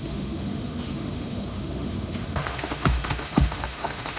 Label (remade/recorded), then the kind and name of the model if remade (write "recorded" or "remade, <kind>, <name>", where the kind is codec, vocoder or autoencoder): remade, autoencoder, DAC-VAE